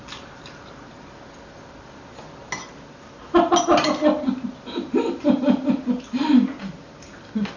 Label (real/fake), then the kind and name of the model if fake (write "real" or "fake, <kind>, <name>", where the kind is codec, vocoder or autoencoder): real